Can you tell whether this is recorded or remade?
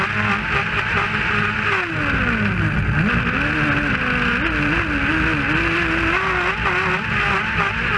recorded